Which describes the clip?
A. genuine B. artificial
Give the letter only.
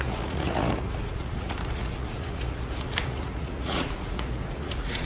B